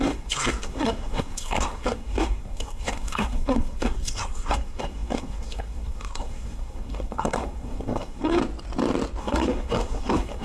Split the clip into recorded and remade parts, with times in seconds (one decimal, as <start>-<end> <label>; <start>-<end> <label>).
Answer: 0.0-8.4 remade; 8.4-9.2 recorded; 9.2-10.4 remade

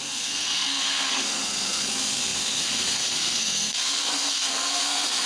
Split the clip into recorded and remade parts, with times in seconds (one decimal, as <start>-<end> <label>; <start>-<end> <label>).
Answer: 0.0-5.3 remade